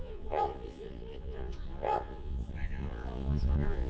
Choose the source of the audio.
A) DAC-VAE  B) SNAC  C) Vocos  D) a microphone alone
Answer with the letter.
C